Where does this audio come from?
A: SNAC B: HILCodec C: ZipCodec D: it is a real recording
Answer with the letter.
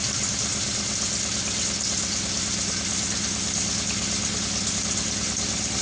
D